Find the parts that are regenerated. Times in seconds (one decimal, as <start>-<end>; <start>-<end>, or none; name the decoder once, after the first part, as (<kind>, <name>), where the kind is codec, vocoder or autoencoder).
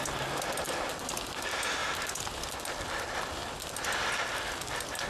1.8-2.6 (vocoder, BigVGAN v2)